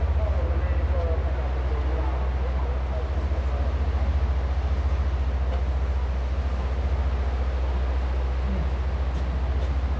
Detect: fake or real real